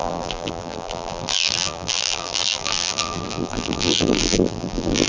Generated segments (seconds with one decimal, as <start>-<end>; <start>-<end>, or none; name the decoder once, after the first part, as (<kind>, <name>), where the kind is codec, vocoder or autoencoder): 0.0-5.1 (vocoder, BigVGAN v2)